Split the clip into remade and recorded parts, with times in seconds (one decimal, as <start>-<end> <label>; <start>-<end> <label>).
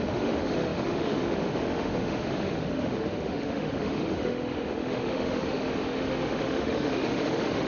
0.0-7.7 remade